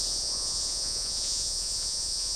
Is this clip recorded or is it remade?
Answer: remade